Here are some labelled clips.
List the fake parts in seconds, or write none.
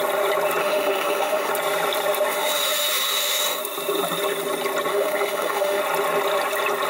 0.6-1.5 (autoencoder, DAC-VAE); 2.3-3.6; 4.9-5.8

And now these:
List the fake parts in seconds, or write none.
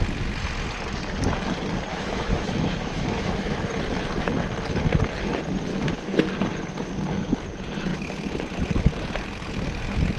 1.9-3.7 (autoencoder, DAC-VAE); 5.7-6.3